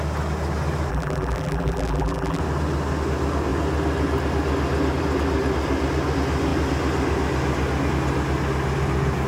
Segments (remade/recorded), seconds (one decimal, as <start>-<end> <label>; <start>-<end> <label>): 0.0-0.9 recorded; 0.9-2.4 remade; 2.4-9.3 recorded